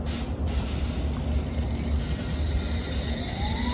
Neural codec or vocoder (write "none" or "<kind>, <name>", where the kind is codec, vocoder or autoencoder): none